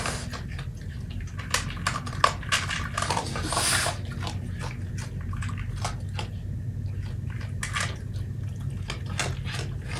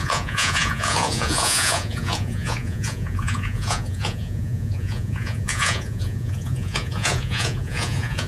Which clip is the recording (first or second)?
first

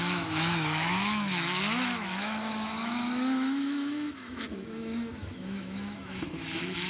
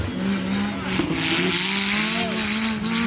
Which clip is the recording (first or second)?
second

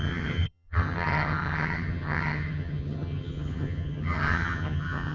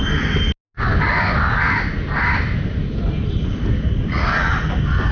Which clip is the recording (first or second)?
second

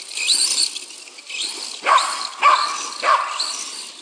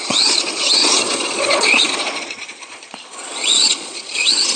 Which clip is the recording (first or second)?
first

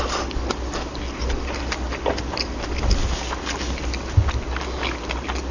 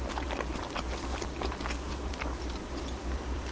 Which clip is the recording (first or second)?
first